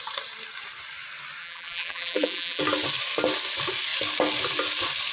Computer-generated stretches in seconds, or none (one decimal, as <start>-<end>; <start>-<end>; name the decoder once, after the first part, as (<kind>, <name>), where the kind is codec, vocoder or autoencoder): 1.4-2.6 (vocoder, BigVGAN v2)